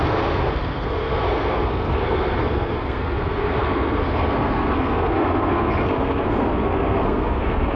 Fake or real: fake